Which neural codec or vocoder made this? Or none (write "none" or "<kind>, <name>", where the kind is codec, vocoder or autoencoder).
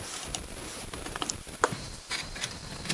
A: vocoder, BigVGAN v2